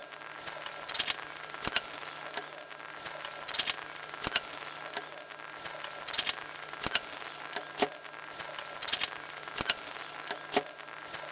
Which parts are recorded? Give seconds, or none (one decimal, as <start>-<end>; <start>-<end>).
0.0-11.3